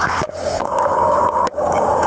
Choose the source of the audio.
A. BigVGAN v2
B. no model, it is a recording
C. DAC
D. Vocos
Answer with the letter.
C